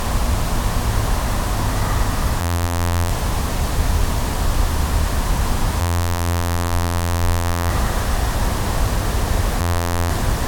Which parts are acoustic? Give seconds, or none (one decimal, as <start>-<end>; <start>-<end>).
0.0-2.4; 3.1-5.8; 7.7-9.6; 10.1-10.5